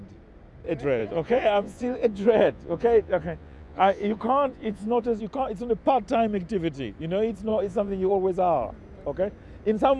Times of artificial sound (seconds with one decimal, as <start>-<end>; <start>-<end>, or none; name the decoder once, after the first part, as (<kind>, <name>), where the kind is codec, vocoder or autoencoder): 1.0-5.2 (vocoder, Vocos); 7.5-8.1